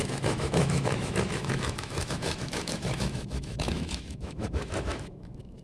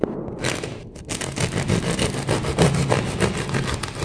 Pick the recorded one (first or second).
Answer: second